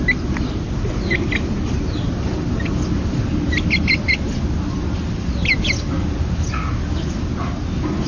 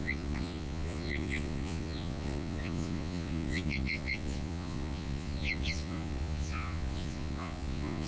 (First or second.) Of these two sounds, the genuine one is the first